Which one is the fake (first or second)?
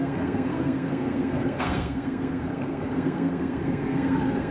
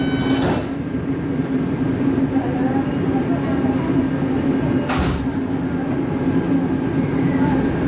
first